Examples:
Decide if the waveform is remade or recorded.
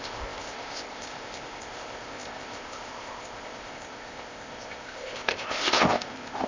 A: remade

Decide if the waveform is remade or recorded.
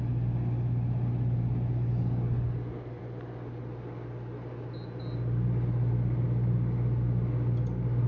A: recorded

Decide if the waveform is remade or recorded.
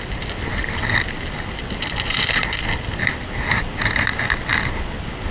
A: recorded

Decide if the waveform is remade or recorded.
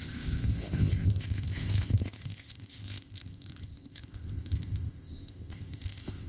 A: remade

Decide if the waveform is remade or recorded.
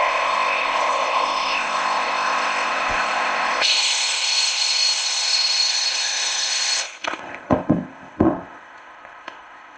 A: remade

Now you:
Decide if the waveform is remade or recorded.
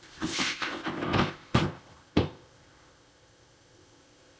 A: remade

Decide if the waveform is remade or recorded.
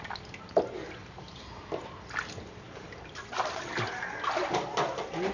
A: recorded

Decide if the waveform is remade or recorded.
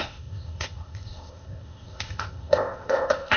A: remade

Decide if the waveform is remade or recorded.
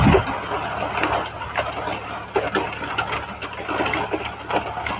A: recorded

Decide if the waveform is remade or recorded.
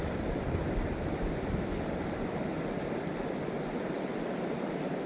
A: recorded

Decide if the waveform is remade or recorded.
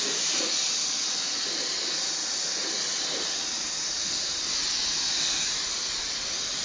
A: recorded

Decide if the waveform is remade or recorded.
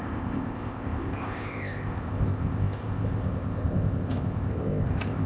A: remade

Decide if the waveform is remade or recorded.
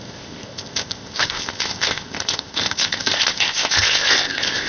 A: remade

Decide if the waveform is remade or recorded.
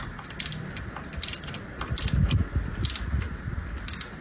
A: recorded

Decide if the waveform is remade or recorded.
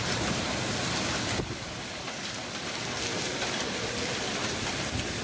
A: recorded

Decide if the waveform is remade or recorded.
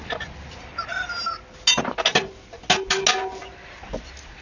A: recorded